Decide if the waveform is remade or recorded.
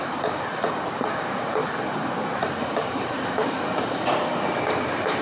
remade